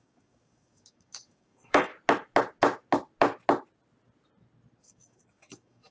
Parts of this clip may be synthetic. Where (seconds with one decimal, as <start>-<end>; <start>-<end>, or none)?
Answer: 0.0-1.9; 4.8-5.9